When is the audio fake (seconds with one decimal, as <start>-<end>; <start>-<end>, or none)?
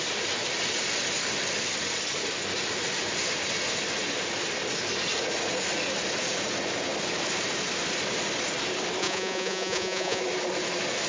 9.0-10.2